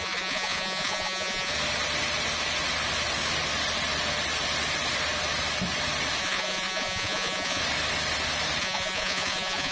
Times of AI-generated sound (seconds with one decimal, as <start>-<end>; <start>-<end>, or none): 0.0-1.5; 6.2-7.6; 8.6-9.7